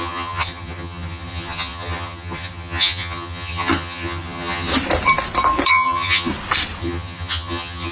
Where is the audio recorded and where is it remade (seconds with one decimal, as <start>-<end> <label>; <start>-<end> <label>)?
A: 0.0-4.7 remade; 4.7-5.7 recorded; 5.7-6.3 remade; 6.3-6.8 recorded; 6.8-7.9 remade